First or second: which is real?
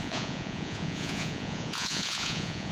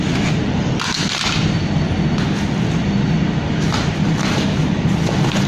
second